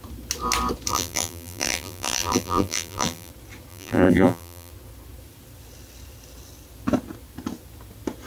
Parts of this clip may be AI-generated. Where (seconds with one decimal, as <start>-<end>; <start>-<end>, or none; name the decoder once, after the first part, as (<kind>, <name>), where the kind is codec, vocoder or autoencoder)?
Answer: 0.9-3.3 (vocoder, BigVGAN v2); 3.7-4.7